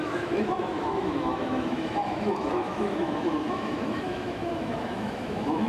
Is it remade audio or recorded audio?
remade